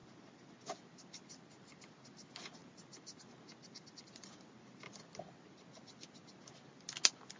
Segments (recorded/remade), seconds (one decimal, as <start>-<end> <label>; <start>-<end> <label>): 0.0-7.4 recorded